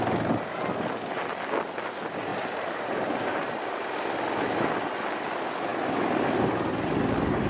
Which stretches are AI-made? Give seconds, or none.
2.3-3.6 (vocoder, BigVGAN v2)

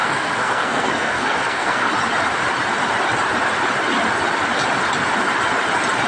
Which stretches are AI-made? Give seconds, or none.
0.0-1.9 (codec, SNAC)

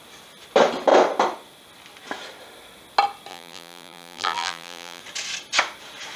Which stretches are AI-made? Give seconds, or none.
3.3-5.0 (vocoder, BigVGAN v2)

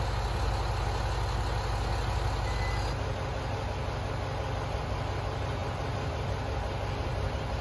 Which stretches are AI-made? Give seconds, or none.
none

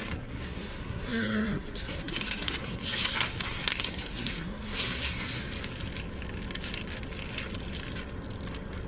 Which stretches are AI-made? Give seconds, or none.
0.0-5.4 (codec, SNAC)

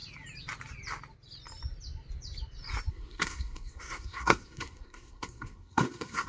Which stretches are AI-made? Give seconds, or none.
2.9-6.3 (codec, SNAC)

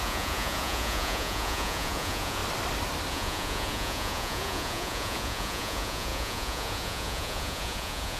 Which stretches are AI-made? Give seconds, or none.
0.0-2.4 (vocoder, Vocos); 3.1-8.2

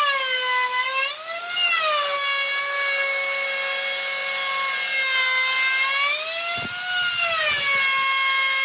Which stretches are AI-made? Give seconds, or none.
none